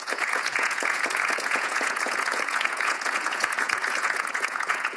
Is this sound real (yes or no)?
no